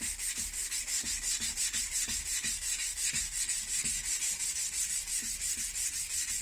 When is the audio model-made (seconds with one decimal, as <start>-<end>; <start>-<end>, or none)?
none